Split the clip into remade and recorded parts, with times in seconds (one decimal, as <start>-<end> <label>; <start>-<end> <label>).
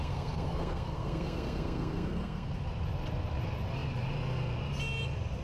0.0-2.5 remade; 2.5-5.4 recorded